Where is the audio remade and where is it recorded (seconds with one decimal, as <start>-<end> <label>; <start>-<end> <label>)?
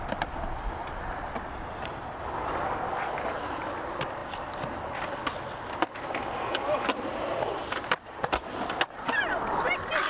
0.0-10.1 recorded